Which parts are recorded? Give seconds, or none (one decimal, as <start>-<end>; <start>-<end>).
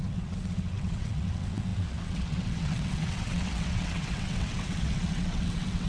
none